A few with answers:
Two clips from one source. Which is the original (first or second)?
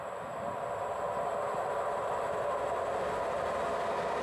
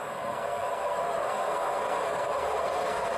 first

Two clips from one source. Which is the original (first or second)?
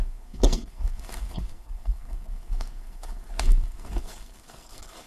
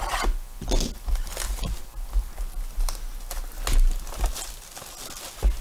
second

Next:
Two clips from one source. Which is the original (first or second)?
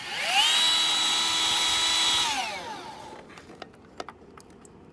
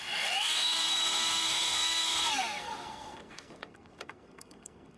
first